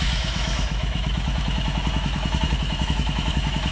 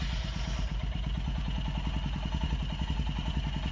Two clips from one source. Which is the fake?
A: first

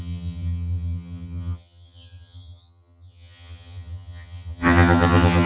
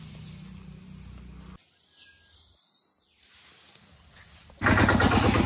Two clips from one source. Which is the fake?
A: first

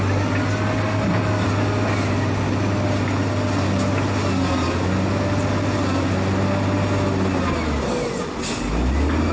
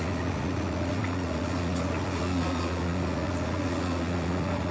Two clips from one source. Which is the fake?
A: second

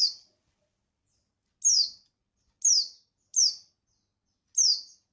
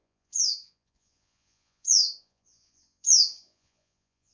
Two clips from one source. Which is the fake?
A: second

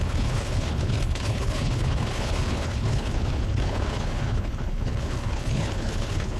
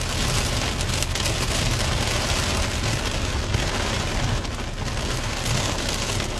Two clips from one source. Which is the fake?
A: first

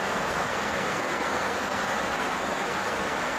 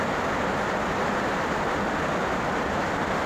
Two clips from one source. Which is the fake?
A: first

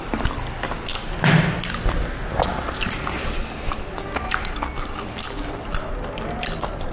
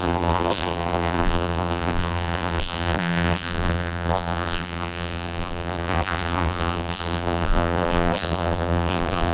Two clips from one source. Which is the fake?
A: second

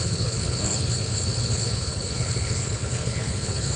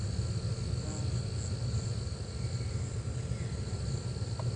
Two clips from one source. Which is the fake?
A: first